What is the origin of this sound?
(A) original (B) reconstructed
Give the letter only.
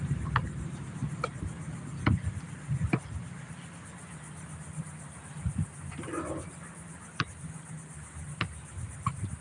A